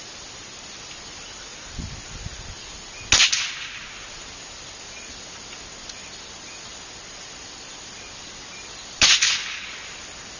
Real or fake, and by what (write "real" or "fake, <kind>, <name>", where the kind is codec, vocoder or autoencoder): real